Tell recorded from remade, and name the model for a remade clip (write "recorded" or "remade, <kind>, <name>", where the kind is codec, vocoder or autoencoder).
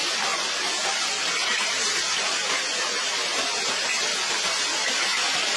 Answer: recorded